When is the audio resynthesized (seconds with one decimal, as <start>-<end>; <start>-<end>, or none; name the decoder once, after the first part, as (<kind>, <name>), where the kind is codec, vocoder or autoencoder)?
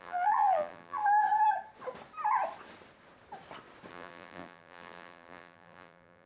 0.0-1.0 (vocoder, BigVGAN v2); 3.9-6.3